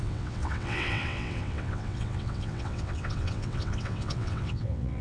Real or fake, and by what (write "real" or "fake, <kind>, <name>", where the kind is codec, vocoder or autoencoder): fake, vocoder, WaveNeXt